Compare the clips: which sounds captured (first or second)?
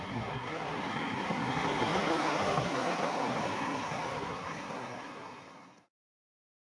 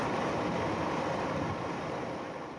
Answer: second